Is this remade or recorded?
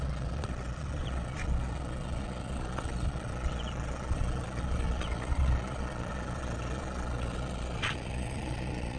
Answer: remade